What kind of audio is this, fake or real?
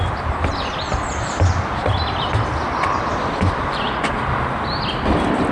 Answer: real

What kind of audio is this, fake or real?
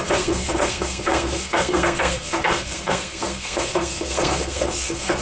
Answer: fake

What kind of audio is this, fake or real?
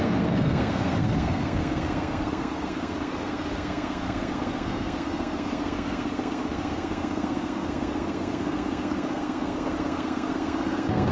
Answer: fake